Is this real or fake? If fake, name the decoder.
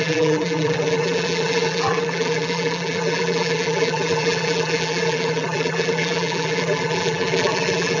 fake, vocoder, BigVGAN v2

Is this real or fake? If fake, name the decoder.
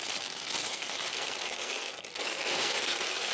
fake, codec, SNAC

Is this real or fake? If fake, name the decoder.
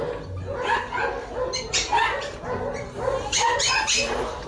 real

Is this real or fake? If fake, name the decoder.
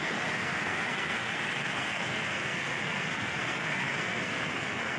fake, codec, SNAC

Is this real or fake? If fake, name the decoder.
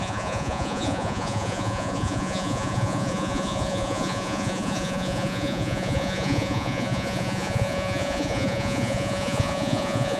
fake, vocoder, Vocos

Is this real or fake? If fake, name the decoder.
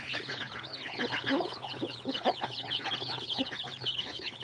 fake, codec, HILCodec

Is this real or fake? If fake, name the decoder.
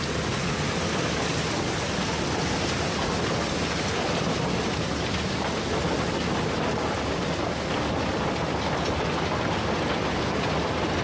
real